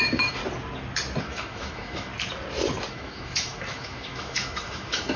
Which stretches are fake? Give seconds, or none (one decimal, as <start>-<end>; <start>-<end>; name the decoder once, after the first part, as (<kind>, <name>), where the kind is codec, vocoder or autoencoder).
0.0-0.4 (autoencoder, DAC-VAE); 1.2-2.1; 2.9-5.2